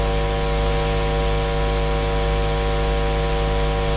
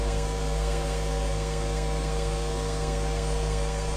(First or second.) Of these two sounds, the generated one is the second